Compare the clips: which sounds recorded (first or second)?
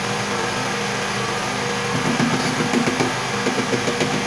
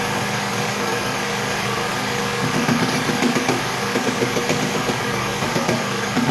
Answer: first